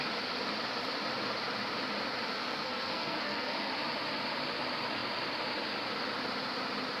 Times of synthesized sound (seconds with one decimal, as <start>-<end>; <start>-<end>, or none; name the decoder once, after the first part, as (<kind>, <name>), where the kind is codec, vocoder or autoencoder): 2.3-3.7 (codec, SNAC)